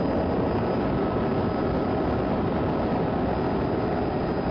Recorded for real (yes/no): yes